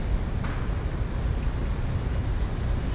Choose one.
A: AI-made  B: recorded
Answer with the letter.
B